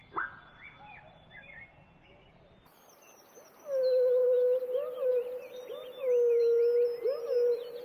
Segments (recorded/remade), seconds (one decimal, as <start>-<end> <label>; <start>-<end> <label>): 0.0-7.8 recorded